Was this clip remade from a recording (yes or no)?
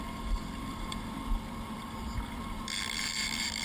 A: yes